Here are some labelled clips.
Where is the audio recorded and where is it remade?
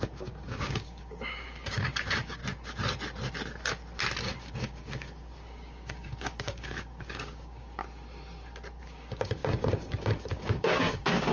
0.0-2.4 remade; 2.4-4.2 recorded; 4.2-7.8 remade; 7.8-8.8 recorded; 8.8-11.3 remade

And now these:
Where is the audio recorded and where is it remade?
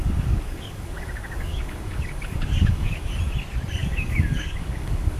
0.0-3.1 remade; 3.1-3.8 recorded; 3.8-5.2 remade